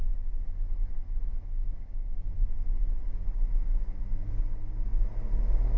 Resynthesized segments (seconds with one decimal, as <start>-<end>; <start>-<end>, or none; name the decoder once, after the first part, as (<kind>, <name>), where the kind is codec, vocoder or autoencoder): none